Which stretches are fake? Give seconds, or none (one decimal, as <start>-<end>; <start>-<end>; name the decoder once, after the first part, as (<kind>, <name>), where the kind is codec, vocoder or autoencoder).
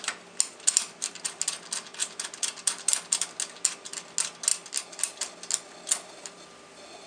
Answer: none